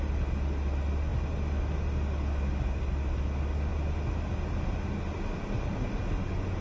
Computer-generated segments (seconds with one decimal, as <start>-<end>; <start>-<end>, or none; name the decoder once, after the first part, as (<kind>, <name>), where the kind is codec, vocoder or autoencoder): none